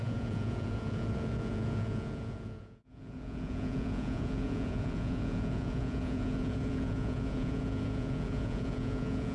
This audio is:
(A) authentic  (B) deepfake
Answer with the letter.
B